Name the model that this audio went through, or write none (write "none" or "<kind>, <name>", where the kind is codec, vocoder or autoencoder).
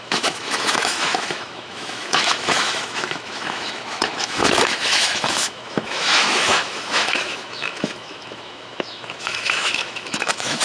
autoencoder, DAC-VAE